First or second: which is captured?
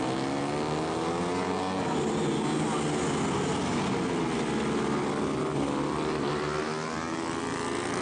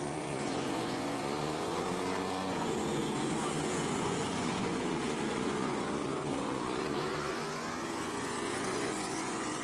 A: first